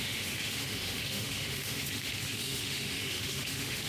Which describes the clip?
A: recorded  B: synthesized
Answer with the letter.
B